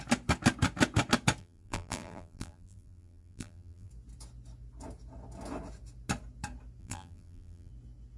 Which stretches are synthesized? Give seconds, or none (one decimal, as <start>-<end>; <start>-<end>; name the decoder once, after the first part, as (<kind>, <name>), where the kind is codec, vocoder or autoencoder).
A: 1.4-3.9 (vocoder, BigVGAN v2); 6.8-7.7